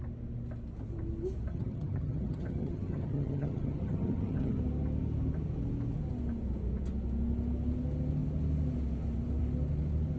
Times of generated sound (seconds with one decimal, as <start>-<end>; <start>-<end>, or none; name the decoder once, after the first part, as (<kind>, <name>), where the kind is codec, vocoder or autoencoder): 1.5-4.6 (vocoder, HiFi-GAN)